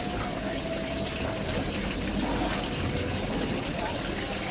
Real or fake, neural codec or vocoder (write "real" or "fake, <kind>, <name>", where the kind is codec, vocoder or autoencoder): real